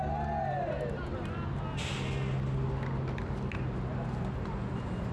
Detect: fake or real real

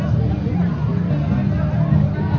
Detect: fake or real real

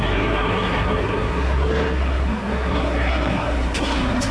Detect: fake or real fake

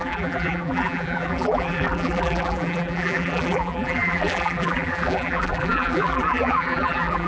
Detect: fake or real fake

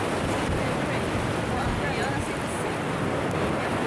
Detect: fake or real real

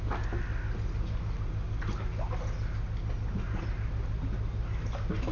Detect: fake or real real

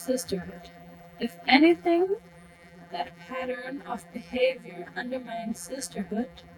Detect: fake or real fake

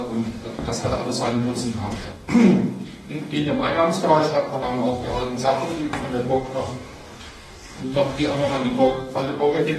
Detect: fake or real fake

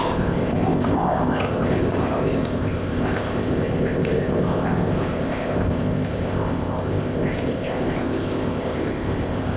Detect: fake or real fake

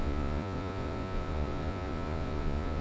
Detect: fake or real fake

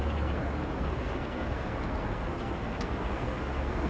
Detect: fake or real fake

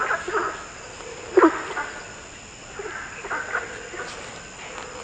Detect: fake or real real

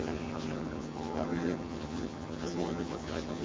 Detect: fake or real fake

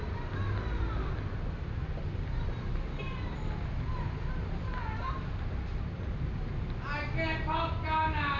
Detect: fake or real real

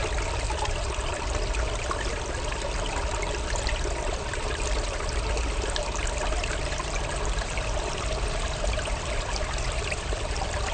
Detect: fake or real real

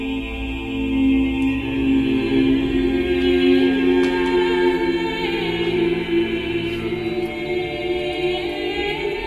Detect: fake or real real